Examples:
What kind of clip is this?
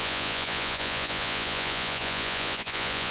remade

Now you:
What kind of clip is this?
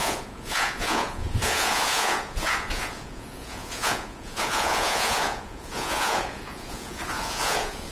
remade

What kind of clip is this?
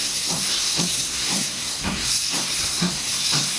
remade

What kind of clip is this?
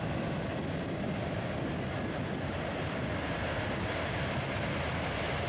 recorded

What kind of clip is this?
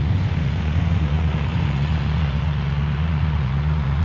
remade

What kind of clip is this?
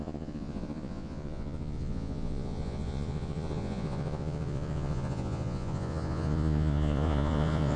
remade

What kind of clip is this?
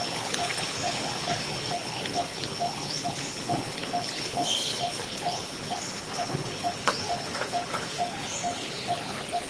remade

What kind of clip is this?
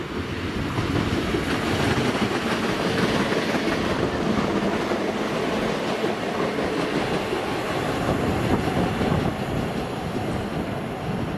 recorded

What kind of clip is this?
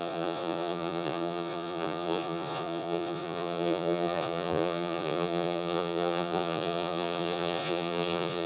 remade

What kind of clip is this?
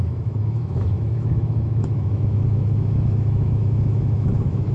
remade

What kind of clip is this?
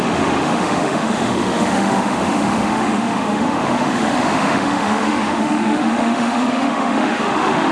remade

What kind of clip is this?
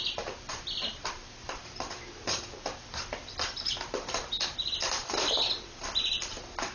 remade